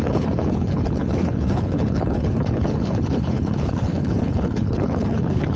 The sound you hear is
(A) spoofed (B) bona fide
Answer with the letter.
A